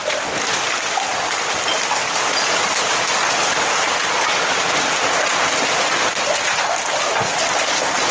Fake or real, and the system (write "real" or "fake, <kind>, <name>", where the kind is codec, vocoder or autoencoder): real